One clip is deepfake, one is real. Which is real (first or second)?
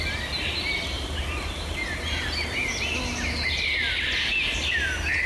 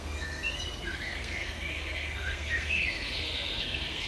first